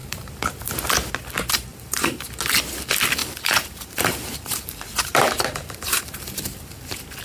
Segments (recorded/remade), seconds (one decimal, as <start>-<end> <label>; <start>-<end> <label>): 0.0-0.7 remade; 0.7-1.7 recorded; 1.7-2.3 remade; 2.3-3.2 recorded; 3.2-6.1 remade; 6.1-7.2 recorded